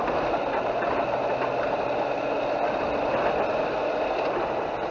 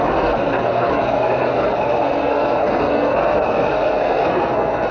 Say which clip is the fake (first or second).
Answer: second